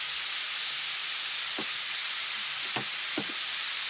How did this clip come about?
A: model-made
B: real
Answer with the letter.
B